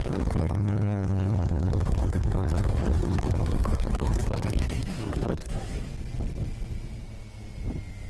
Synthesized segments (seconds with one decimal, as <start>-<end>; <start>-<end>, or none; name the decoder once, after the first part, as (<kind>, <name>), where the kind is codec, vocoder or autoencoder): 0.0-5.9 (codec, SNAC)